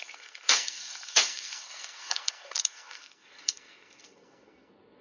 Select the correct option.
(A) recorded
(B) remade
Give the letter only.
B